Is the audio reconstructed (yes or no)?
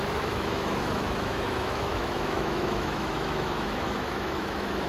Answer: yes